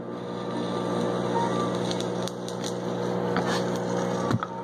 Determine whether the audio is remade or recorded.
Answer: recorded